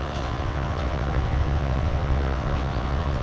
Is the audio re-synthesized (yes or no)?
yes